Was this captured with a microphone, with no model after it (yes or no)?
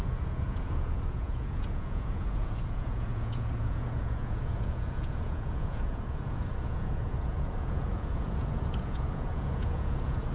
no